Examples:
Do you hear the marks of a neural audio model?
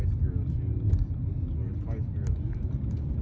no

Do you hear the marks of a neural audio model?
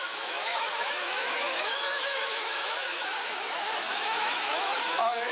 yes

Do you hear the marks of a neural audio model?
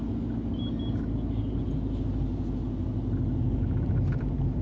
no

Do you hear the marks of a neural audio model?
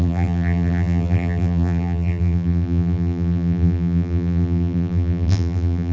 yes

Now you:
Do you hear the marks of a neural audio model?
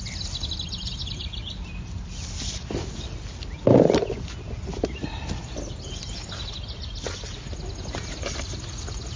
no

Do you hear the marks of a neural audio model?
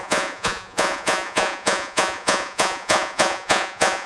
yes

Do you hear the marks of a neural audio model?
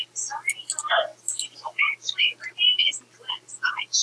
no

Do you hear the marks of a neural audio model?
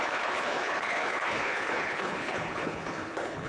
yes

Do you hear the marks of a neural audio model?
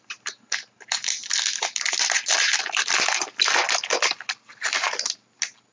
no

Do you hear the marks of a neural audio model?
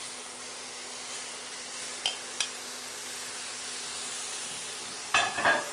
no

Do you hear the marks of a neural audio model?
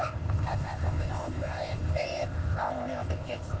yes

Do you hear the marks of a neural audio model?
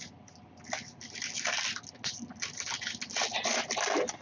no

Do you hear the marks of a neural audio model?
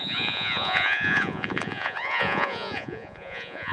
yes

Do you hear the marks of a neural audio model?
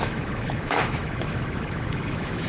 yes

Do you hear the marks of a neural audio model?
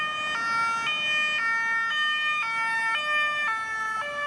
no